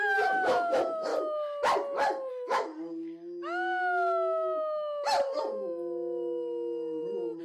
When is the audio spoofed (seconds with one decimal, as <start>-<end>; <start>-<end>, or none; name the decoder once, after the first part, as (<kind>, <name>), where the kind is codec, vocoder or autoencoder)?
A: 0.0-1.1 (autoencoder, DAC-VAE); 2.3-2.7